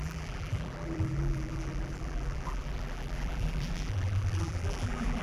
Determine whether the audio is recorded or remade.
remade